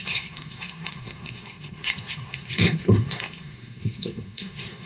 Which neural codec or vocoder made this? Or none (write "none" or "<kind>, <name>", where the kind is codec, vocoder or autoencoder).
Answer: codec, SNAC